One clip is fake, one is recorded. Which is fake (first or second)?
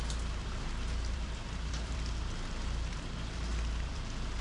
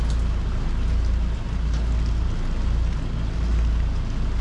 first